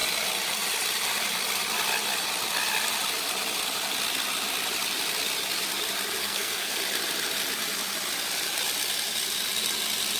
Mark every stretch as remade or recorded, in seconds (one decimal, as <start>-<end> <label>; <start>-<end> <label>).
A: 0.0-6.2 recorded; 6.2-6.8 remade; 6.8-10.2 recorded